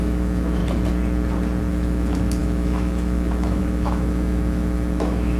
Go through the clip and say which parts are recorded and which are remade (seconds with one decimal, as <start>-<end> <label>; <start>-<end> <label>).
0.0-0.6 remade; 0.6-1.7 recorded; 1.7-5.4 remade